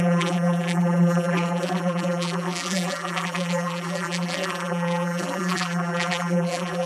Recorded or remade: remade